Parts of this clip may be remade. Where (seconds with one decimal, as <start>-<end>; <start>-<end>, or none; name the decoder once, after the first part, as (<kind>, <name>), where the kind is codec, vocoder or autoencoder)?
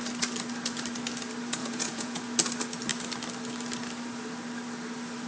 1.6-2.2 (vocoder, Vocos)